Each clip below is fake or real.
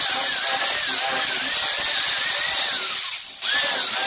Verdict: real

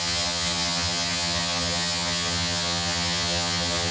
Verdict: fake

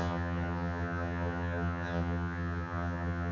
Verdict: fake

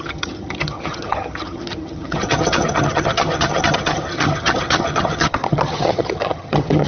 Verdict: fake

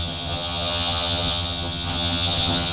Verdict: fake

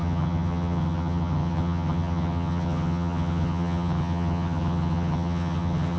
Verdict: fake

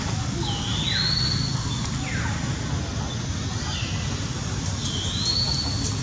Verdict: real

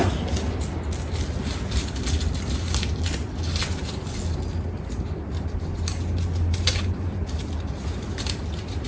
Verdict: real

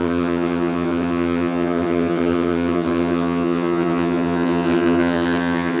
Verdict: fake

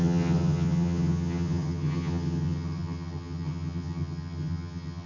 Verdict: fake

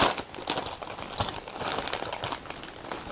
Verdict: real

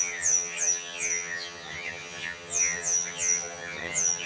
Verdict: fake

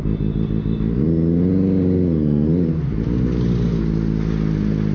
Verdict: real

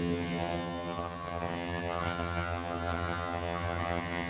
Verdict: fake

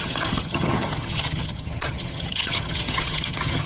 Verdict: fake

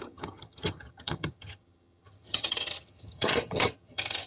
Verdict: fake